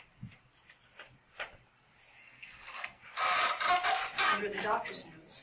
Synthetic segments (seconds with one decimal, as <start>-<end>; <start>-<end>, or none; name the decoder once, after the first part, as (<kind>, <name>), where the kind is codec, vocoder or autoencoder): 2.2-3.0 (codec, SNAC)